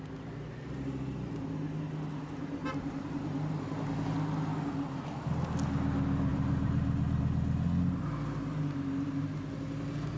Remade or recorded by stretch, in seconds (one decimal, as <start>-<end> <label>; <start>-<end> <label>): 0.0-2.6 recorded; 2.6-3.6 remade; 3.6-6.3 recorded; 6.3-7.2 remade; 7.2-10.2 recorded